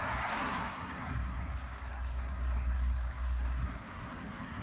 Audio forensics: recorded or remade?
remade